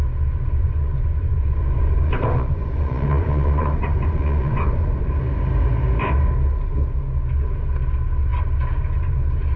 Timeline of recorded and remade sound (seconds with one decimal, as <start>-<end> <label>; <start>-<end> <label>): 0.0-0.6 recorded; 0.6-5.1 remade; 5.1-9.6 recorded